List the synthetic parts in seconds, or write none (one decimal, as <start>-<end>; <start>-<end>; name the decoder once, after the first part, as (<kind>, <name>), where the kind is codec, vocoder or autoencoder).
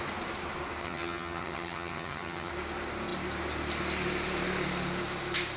0.8-2.5 (vocoder, HiFi-GAN)